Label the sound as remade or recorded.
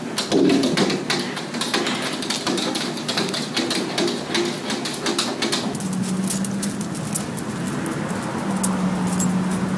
recorded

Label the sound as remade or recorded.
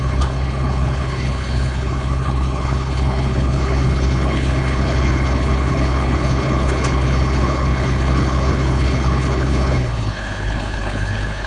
remade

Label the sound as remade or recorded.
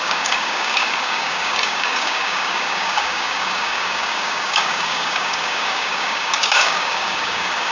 remade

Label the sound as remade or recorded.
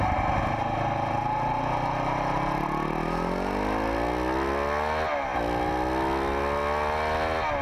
recorded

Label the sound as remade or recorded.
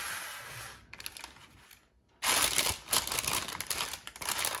recorded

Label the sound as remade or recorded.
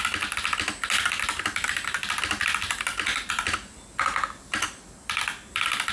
recorded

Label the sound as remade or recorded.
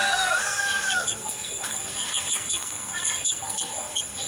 remade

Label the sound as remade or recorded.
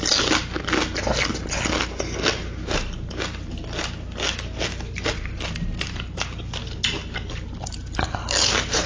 recorded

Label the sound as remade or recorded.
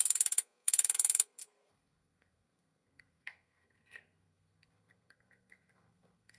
remade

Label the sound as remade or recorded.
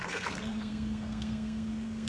remade